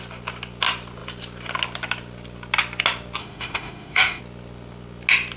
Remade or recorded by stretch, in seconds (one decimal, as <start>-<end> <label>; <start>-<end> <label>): 0.0-3.2 recorded; 3.2-4.2 remade; 4.2-5.4 recorded